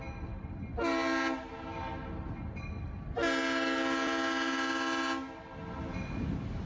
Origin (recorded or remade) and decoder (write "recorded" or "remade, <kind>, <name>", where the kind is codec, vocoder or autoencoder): recorded